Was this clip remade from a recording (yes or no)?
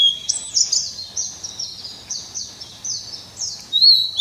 no